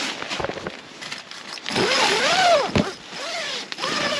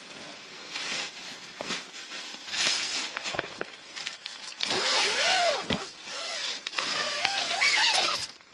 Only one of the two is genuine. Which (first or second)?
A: first